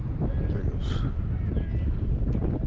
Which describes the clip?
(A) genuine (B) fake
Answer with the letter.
A